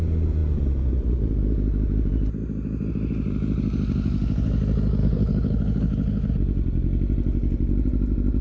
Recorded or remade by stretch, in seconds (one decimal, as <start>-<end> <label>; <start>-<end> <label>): 0.0-5.0 recorded; 5.0-6.3 remade; 6.3-8.4 recorded